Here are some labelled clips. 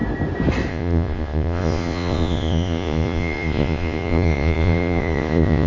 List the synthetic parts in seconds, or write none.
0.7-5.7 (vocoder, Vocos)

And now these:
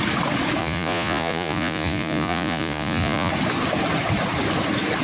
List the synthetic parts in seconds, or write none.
0.6-3.3 (vocoder, Vocos)